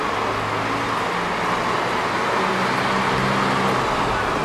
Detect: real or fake real